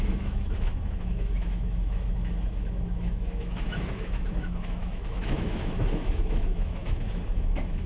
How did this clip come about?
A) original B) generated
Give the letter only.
B